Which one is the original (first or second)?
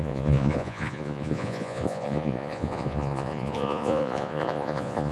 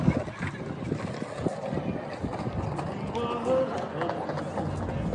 second